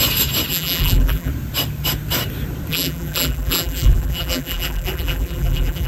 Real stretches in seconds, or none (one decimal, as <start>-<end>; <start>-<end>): 0.0-0.5; 1.3-2.7